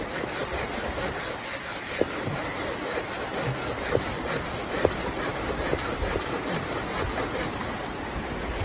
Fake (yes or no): no